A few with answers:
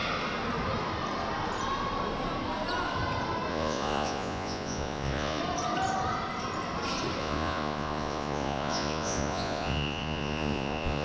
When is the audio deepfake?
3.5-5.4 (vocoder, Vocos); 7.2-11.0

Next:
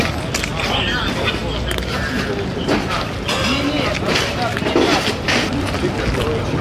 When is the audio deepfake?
none

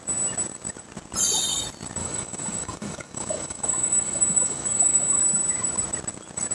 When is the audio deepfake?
2.0-5.2 (autoencoder, DAC-VAE)

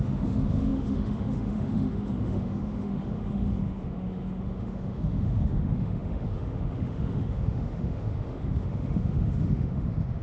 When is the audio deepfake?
0.0-10.2 (autoencoder, DAC-VAE)